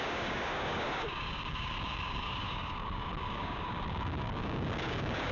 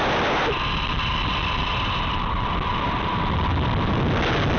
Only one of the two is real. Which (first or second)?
second